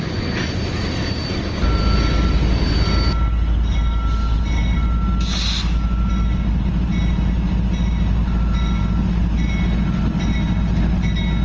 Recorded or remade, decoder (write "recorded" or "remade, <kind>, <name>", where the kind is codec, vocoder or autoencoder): recorded